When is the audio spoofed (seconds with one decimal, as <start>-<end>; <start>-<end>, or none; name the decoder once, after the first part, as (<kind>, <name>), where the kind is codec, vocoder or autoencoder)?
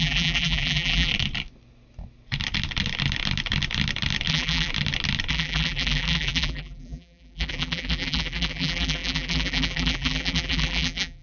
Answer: 0.0-1.1 (vocoder, BigVGAN v2); 4.3-4.7; 5.3-11.2